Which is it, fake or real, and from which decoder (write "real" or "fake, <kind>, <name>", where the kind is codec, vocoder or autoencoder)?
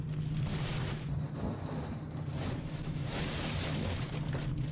real